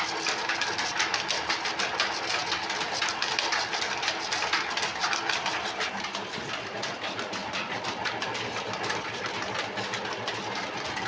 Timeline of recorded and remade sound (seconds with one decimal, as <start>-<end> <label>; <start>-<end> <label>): 0.0-11.1 recorded